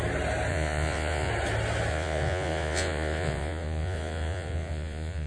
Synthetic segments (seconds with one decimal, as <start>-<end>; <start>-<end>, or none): 0.5-1.3; 1.9-5.3